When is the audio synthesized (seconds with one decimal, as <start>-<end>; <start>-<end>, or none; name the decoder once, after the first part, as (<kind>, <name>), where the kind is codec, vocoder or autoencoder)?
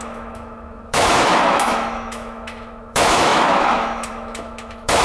0.0-5.0 (autoencoder, DAC-VAE)